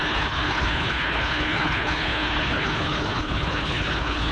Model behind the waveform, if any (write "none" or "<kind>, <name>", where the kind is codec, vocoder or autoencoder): codec, HILCodec